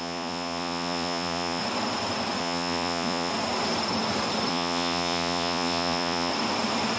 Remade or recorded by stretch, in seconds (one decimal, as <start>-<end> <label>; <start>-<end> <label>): 0.0-1.6 remade; 1.6-2.4 recorded; 2.4-3.3 remade; 3.3-4.5 recorded; 4.5-6.3 remade; 6.3-7.0 recorded